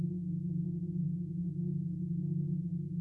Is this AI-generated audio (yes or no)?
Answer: no